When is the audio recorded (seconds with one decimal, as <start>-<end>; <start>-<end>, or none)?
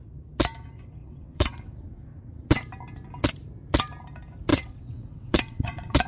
0.0-1.0; 2.6-4.5